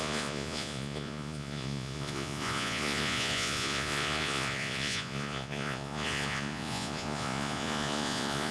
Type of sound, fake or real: fake